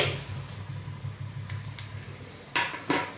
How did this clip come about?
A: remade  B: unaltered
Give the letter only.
B